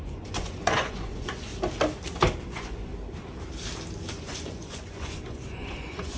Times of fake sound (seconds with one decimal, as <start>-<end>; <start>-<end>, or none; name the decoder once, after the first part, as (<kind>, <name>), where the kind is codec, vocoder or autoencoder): 0.0-1.5 (vocoder, Vocos); 2.4-2.9; 4.1-6.2